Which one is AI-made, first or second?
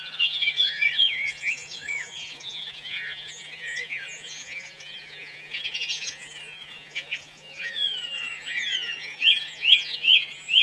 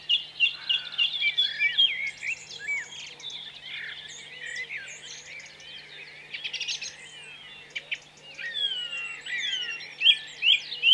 first